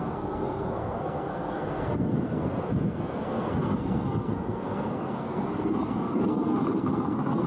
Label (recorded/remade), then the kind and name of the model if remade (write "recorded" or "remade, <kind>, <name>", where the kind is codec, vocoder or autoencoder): remade, codec, SNAC